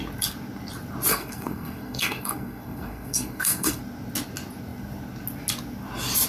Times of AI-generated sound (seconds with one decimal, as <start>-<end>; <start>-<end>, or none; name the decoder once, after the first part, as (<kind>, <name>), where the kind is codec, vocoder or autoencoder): 1.1-3.8 (codec, SNAC)